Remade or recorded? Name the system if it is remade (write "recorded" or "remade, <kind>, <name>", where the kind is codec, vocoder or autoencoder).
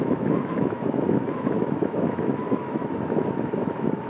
remade, autoencoder, DAC-VAE